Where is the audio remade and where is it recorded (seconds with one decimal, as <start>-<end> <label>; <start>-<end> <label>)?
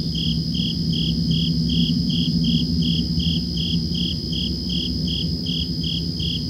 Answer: 0.0-1.8 recorded; 1.8-2.4 remade; 2.4-6.5 recorded